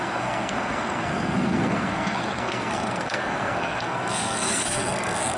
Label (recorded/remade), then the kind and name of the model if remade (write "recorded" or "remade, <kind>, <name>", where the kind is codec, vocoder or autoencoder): remade, codec, SNAC